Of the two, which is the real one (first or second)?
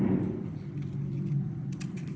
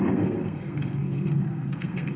first